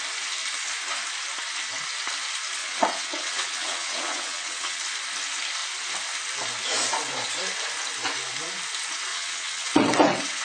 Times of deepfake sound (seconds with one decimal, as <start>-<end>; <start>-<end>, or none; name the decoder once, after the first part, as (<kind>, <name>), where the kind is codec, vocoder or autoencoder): 2.6-4.8 (vocoder, WaveNeXt); 9.1-10.4